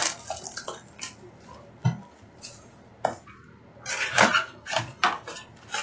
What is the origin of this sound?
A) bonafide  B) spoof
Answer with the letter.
A